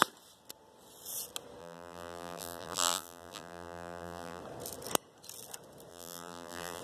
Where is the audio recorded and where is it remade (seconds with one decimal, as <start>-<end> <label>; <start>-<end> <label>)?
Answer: 0.0-1.6 recorded; 1.6-4.4 remade; 4.4-5.9 recorded; 5.9-6.8 remade